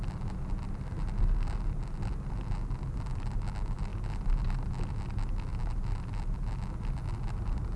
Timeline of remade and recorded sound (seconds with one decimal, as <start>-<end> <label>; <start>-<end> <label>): 0.0-7.8 recorded